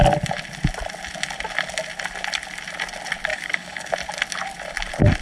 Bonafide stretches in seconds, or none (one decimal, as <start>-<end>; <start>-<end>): 0.0-3.3; 3.9-5.2